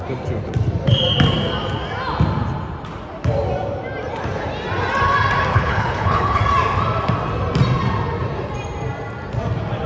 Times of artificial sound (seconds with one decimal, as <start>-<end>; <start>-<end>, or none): 5.5-6.4